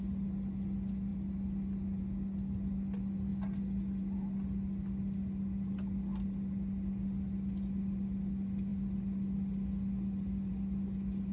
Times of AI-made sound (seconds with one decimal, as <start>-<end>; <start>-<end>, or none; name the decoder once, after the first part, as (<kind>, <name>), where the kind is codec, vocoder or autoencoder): none